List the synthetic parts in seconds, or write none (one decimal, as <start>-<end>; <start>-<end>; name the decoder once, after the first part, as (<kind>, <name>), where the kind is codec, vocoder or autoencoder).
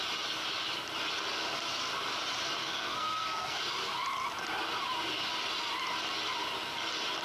2.6-3.6 (codec, SNAC)